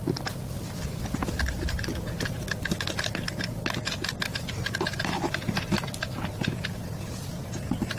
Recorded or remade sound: recorded